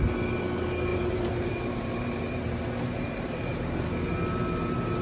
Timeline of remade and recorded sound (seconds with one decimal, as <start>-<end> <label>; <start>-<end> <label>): 0.0-0.9 recorded; 0.9-3.9 remade; 3.9-5.0 recorded